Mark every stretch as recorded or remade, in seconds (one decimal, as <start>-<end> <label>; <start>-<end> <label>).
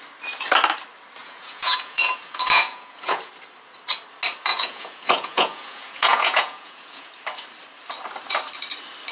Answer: 0.0-1.2 recorded; 1.2-3.3 remade; 3.3-4.5 recorded; 4.5-7.1 remade; 7.1-9.1 recorded